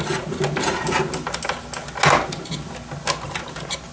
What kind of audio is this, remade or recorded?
recorded